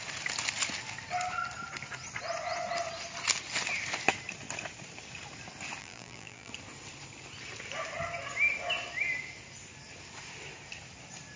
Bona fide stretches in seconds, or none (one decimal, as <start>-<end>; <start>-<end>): 0.0-5.8; 6.5-11.4